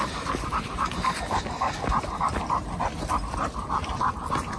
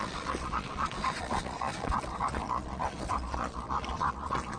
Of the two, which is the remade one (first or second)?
second